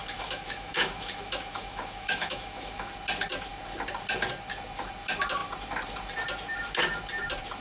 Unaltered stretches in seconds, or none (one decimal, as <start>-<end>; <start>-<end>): 2.9-7.6